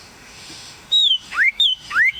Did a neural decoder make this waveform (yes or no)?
yes